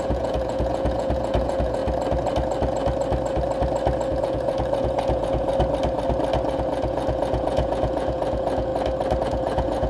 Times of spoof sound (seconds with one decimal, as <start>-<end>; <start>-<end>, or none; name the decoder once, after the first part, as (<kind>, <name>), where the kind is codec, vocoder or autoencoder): 0.0-1.8 (vocoder, Vocos); 4.2-5.5; 6.5-8.7; 9.2-9.9